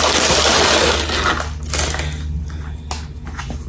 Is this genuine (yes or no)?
yes